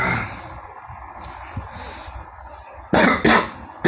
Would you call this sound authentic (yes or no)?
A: yes